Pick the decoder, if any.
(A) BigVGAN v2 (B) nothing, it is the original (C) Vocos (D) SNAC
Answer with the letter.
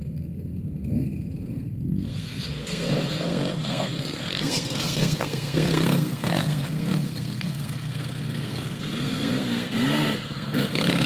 D